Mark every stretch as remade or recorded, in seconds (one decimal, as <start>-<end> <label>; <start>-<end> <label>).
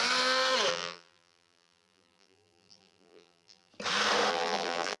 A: 0.0-0.7 recorded; 0.7-3.7 remade; 3.7-4.3 recorded; 4.3-5.0 remade